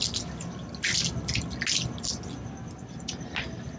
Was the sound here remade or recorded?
recorded